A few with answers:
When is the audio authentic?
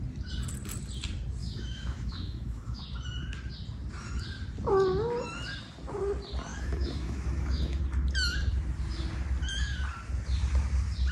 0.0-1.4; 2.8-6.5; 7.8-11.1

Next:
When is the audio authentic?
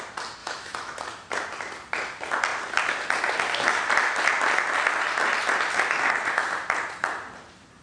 0.0-0.4; 1.0-7.8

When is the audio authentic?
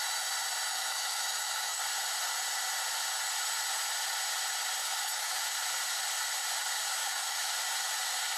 0.0-0.7; 1.8-4.8; 5.4-7.0; 7.5-8.4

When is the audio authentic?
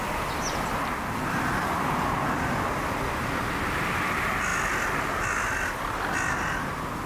0.0-7.1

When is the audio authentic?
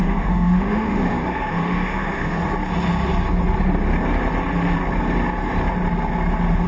2.4-6.7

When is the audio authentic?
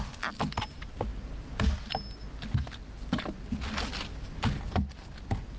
0.0-5.6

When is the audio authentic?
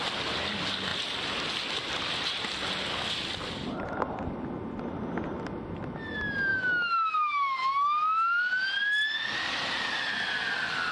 0.0-6.5; 8.4-10.9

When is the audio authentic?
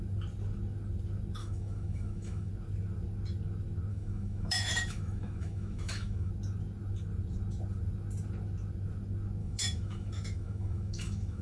0.0-1.4; 2.5-3.9; 6.3-9.4